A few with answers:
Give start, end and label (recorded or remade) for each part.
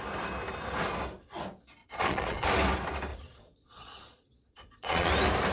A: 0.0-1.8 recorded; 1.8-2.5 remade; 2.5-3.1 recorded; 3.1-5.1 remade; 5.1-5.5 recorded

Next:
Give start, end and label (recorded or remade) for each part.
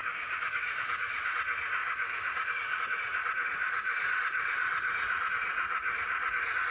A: 0.0-1.3 remade; 1.3-1.8 recorded; 1.8-2.8 remade; 2.8-6.7 recorded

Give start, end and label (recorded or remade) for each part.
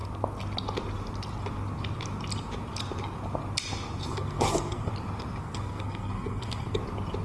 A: 0.0-4.1 recorded; 4.1-4.9 remade; 4.9-5.4 recorded; 5.4-6.8 remade; 6.8-7.2 recorded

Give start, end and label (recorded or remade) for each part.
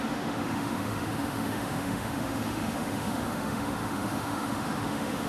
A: 0.0-5.3 remade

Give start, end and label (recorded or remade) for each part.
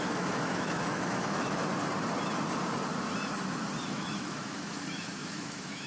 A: 0.0-1.7 remade; 1.7-3.8 recorded; 3.8-5.9 remade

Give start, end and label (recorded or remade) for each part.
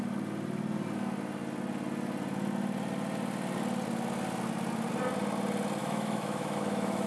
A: 0.0-5.8 recorded; 5.8-7.1 remade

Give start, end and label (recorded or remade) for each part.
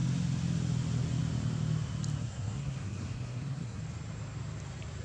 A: 0.0-2.2 recorded; 2.2-3.8 remade; 3.8-5.0 recorded